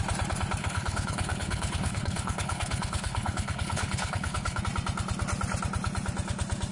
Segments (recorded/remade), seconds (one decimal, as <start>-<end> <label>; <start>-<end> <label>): 0.0-0.6 recorded; 0.6-4.6 remade; 4.6-6.7 recorded